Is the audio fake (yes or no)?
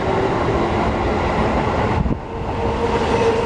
no